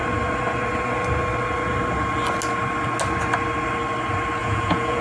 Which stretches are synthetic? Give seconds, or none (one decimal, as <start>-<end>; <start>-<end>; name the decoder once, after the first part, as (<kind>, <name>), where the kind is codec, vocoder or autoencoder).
4.4-5.0 (vocoder, Vocos)